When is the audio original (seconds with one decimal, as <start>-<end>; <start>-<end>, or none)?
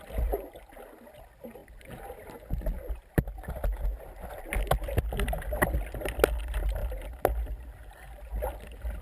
0.0-9.0